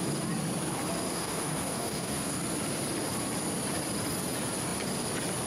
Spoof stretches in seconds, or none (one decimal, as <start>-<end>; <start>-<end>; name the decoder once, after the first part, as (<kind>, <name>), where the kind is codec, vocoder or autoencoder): 1.1-2.4 (codec, DAC)